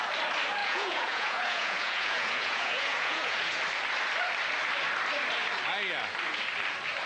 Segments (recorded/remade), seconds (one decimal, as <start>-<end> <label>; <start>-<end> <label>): 0.0-0.6 recorded; 0.6-3.6 remade; 3.6-7.1 recorded